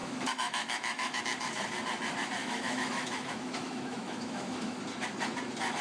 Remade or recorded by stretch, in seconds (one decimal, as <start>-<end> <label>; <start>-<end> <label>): 0.0-1.2 remade; 1.2-2.4 recorded; 2.4-4.8 remade; 4.8-5.8 recorded